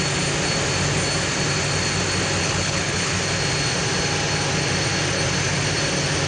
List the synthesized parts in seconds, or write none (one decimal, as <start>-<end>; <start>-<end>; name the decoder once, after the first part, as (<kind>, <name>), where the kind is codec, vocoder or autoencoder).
2.4-3.1 (codec, HILCodec)